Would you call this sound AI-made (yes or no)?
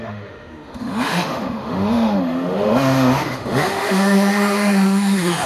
yes